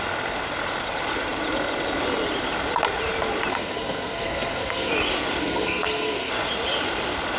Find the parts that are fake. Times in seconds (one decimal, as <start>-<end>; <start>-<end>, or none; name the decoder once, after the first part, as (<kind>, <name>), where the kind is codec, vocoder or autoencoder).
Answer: 3.5-4.9 (codec, SNAC); 5.4-6.3